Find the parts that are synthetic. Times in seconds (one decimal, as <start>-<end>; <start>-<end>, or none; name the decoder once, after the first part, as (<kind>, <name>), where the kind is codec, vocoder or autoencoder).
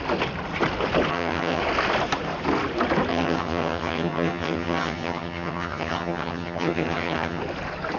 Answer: 1.1-1.6 (vocoder, HiFi-GAN); 3.1-7.4